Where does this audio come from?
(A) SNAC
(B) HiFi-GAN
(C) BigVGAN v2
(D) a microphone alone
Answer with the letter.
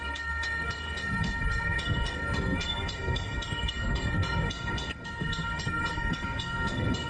A